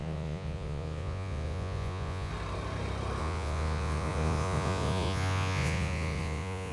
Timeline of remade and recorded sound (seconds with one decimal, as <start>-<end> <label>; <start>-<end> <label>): 0.0-2.3 remade; 2.3-3.2 recorded; 3.2-6.7 remade